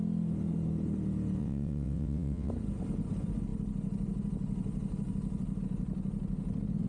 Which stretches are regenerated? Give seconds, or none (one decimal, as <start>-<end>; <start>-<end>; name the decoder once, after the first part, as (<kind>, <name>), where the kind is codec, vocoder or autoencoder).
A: 1.4-2.5 (vocoder, WaveNeXt)